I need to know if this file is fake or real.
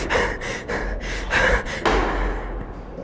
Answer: real